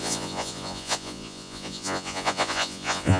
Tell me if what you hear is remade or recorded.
remade